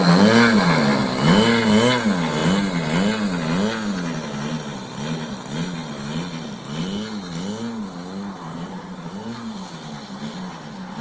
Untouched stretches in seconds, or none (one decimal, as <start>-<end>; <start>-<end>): 0.0-8.5; 9.1-11.0